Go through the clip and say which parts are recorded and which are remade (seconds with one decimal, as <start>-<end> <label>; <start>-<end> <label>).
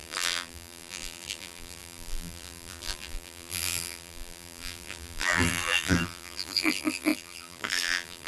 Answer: 0.0-8.3 remade